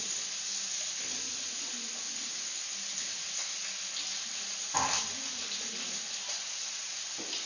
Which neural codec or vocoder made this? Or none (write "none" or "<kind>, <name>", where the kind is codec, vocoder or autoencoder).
none